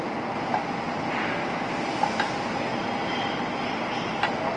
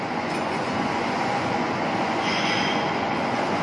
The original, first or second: first